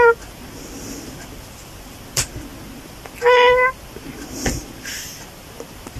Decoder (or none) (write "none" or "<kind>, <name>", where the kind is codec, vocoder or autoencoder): none